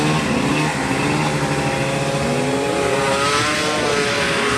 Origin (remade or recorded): recorded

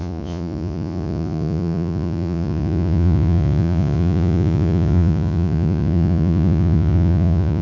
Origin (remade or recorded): remade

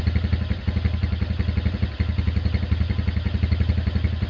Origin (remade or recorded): recorded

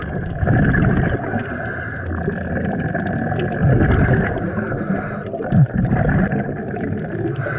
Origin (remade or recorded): recorded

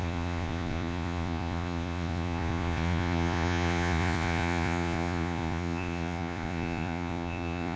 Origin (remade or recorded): remade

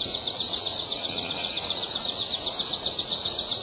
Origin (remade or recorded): remade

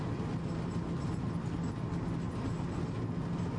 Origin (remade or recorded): recorded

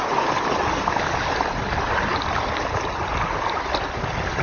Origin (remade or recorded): recorded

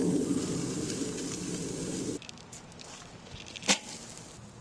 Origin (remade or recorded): recorded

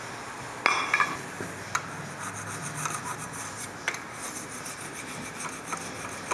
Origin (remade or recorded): recorded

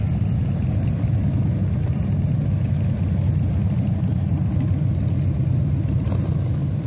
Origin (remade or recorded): recorded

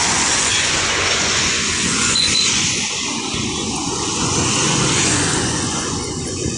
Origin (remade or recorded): remade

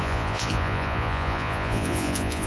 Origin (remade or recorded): remade